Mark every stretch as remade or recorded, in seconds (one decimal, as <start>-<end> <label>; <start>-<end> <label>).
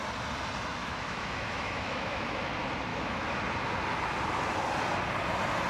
0.0-0.8 recorded; 0.8-2.5 remade; 2.5-2.9 recorded; 2.9-3.4 remade; 3.4-5.7 recorded